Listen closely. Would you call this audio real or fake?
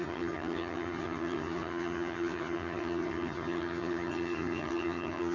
fake